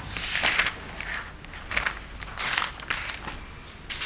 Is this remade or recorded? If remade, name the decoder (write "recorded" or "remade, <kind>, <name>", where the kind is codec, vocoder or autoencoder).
recorded